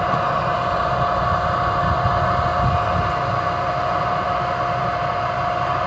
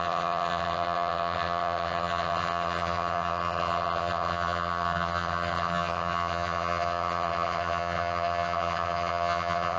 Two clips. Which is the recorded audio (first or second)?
first